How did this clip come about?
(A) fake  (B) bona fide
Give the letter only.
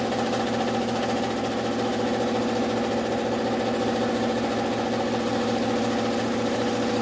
B